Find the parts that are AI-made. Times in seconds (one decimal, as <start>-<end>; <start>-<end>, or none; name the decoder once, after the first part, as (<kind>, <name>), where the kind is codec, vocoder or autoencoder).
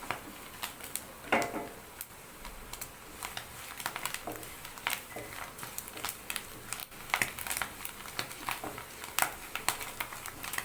none